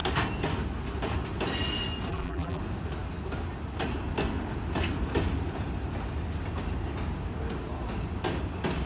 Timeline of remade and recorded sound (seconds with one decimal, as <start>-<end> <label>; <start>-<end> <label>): 0.0-2.1 recorded; 2.1-2.6 remade; 2.6-8.9 recorded